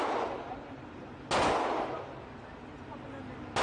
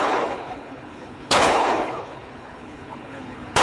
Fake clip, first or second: second